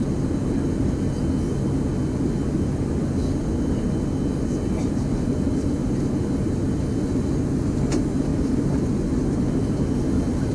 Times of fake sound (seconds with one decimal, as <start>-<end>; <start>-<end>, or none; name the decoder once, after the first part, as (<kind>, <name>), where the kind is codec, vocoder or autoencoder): none

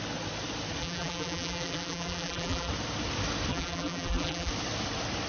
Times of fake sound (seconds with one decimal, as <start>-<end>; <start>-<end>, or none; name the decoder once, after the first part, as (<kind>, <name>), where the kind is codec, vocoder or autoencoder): 0.8-2.7 (vocoder, BigVGAN v2); 3.5-4.5

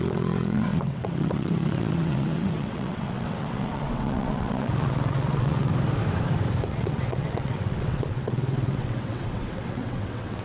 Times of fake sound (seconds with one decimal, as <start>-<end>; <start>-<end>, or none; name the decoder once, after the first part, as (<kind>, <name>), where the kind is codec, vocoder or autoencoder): 0.0-5.7 (vocoder, WaveNeXt); 6.7-10.4

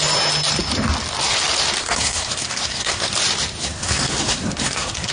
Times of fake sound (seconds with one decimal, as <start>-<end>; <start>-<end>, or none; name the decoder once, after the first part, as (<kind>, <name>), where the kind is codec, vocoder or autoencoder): 1.8-3.1 (codec, SNAC); 3.6-5.1

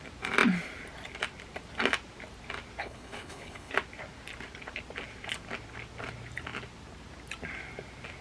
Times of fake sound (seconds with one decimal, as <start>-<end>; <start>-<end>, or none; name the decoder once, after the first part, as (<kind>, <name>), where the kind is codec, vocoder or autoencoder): 2.8-3.7 (codec, HILCodec)

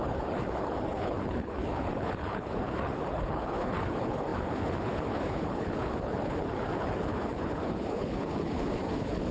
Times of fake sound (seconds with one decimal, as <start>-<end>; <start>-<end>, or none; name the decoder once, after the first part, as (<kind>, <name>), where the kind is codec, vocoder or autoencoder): 0.0-9.3 (codec, HILCodec)

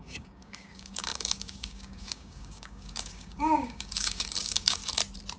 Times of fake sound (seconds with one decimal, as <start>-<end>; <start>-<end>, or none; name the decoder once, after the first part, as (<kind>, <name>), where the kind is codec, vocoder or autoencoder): 0.0-4.8 (codec, DAC)